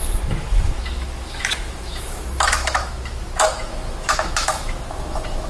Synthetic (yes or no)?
yes